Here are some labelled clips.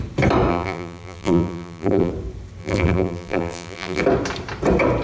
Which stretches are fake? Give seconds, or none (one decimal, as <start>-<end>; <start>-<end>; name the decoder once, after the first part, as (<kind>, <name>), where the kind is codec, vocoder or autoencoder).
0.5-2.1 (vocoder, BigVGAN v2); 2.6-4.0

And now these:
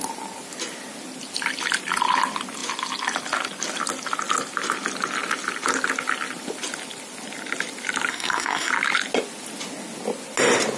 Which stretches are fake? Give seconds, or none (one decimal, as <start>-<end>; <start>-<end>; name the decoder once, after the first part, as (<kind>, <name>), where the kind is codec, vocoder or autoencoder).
8.1-8.7 (codec, SNAC)

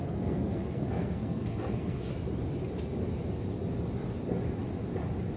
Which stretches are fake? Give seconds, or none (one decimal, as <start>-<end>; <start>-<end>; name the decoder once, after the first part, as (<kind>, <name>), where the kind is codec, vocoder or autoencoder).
0.0-2.1 (codec, SNAC)

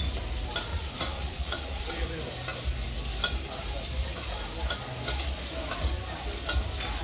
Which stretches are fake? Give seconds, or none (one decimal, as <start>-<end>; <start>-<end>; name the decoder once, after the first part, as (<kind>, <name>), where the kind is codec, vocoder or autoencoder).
0.7-1.9 (vocoder, Vocos)

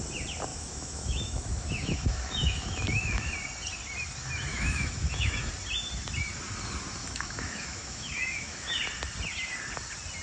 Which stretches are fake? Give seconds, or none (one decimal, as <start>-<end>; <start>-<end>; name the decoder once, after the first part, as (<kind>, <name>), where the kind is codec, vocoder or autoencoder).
0.5-3.3 (autoencoder, DAC-VAE); 4.5-5.5; 7.0-8.8

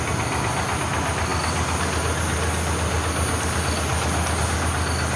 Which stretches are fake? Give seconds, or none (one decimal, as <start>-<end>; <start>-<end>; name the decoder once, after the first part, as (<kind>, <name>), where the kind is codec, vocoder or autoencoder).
none